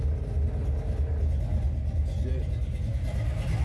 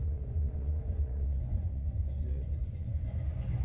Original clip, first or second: first